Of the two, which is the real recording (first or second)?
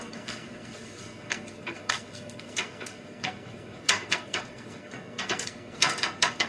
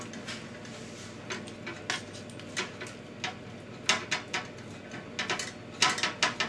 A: second